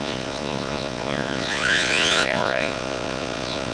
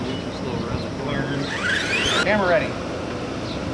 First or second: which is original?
second